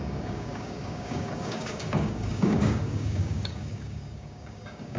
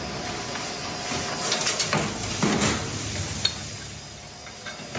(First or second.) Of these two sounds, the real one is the second